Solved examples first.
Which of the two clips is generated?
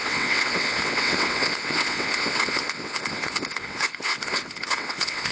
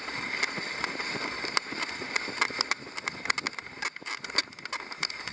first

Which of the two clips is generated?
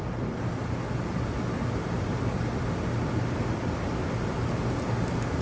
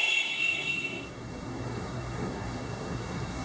second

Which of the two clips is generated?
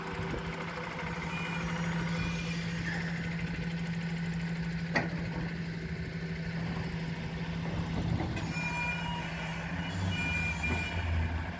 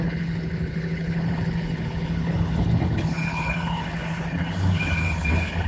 second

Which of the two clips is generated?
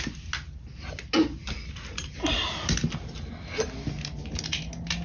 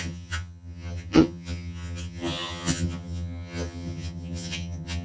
second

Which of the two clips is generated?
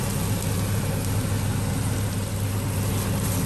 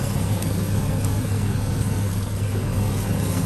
second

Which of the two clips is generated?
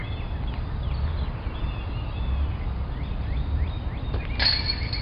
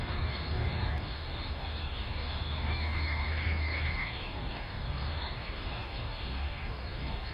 second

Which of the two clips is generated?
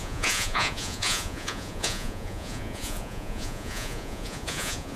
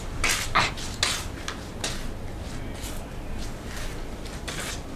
first